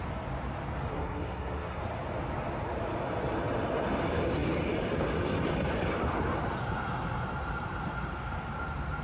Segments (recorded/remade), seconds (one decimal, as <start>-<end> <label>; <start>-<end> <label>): 0.0-0.9 recorded; 0.9-1.8 remade; 1.8-9.0 recorded